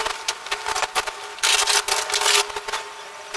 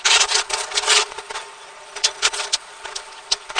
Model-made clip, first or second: second